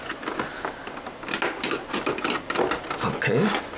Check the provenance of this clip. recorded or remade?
recorded